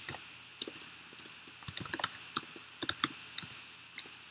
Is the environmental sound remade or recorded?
recorded